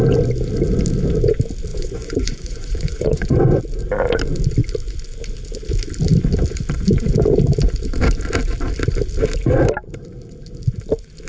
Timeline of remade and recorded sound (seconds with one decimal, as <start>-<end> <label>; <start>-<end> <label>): 0.0-1.7 recorded; 1.7-3.6 remade; 3.6-11.3 recorded